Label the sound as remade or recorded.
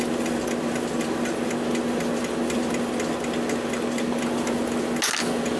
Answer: recorded